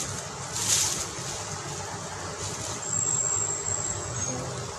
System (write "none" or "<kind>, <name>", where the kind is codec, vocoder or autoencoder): none